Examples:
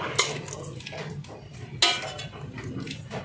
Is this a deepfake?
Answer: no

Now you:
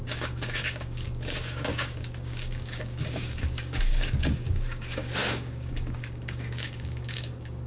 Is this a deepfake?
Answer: yes